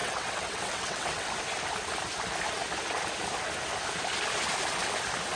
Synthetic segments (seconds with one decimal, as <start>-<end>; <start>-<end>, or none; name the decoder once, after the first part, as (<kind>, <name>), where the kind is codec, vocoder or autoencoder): 0.0-1.3 (vocoder, WaveNeXt)